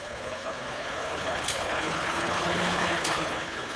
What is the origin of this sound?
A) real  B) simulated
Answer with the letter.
B